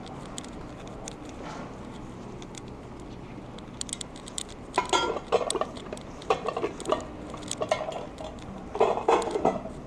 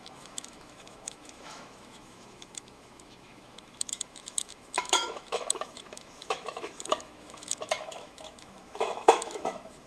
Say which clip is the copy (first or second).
second